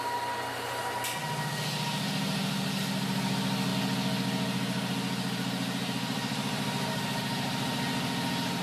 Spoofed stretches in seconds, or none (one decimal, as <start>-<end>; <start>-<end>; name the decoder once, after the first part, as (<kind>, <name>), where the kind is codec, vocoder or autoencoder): none